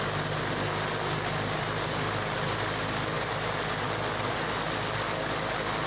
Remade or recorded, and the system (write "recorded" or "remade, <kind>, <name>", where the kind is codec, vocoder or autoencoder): recorded